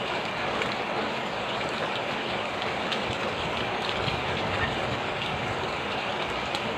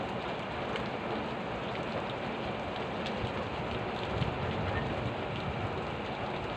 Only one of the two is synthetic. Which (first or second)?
first